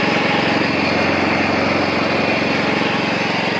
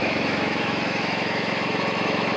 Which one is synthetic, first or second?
second